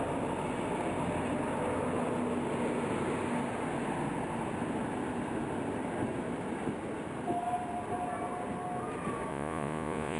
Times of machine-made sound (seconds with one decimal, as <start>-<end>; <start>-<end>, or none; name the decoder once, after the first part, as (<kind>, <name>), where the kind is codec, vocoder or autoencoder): 9.3-10.2 (vocoder, Vocos)